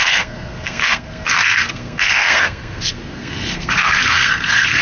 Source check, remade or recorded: remade